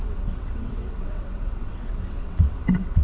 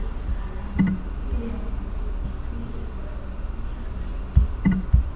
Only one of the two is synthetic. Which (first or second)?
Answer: first